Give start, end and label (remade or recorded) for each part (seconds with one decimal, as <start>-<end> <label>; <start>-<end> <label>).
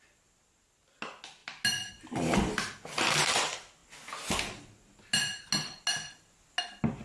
0.0-7.0 recorded